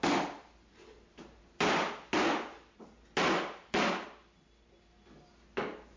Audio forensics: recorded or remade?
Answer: recorded